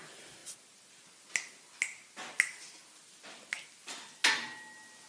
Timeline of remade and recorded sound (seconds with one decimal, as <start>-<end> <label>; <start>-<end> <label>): 0.0-5.1 recorded